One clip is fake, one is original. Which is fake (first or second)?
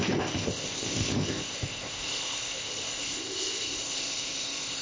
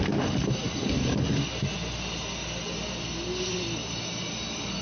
first